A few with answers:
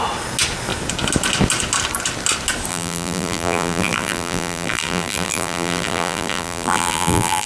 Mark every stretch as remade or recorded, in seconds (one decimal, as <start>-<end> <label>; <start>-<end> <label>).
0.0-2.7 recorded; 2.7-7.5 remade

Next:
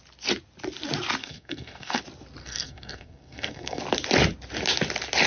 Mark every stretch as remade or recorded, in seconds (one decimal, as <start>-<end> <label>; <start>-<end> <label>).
0.0-1.2 recorded; 1.2-2.0 remade; 2.0-2.4 recorded; 2.4-3.8 remade; 3.8-5.3 recorded

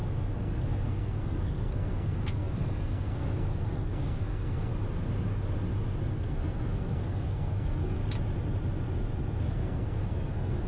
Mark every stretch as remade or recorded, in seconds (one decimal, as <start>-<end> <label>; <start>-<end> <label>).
0.0-4.7 remade; 4.7-6.1 recorded; 6.1-8.0 remade; 8.0-9.4 recorded; 9.4-10.7 remade